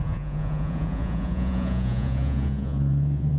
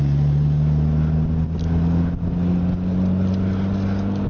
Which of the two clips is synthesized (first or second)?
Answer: first